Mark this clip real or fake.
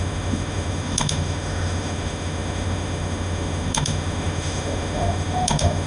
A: fake